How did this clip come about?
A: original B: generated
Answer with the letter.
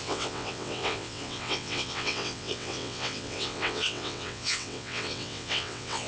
B